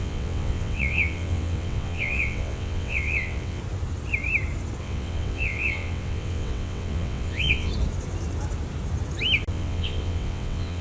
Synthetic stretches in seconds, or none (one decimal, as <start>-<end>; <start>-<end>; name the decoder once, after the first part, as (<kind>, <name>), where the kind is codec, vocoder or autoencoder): 0.0-3.6 (vocoder, WaveNeXt); 4.8-7.7; 9.5-10.8